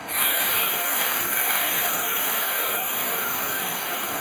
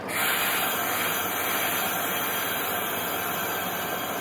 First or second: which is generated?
first